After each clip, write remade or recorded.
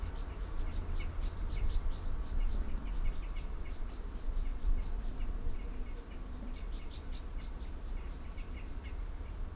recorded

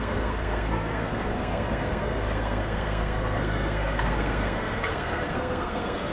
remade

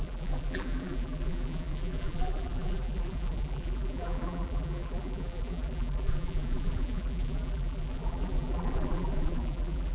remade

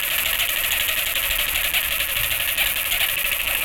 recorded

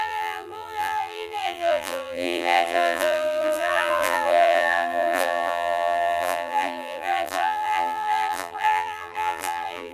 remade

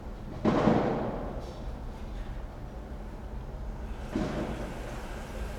recorded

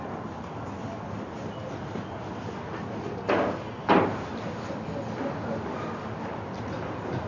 recorded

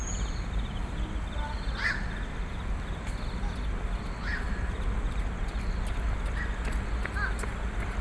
recorded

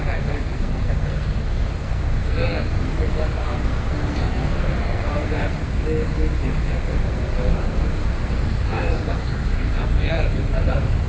remade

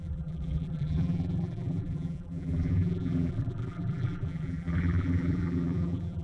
remade